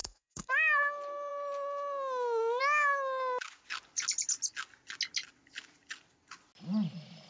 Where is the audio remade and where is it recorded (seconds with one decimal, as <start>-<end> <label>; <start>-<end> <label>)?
0.0-0.5 remade; 0.5-7.3 recorded